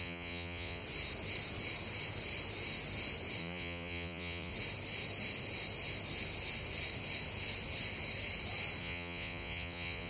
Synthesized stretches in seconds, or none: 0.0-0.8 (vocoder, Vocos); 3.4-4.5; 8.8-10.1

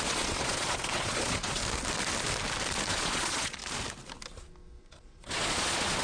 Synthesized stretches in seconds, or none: 0.0-1.6 (vocoder, Vocos); 2.9-3.6; 4.8-6.0

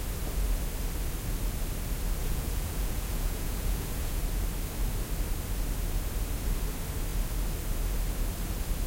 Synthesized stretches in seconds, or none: 2.2-4.2 (vocoder, Vocos)

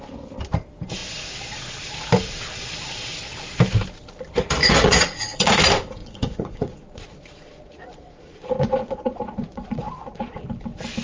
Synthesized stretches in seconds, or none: 4.6-5.6 (vocoder, Vocos); 6.0-10.4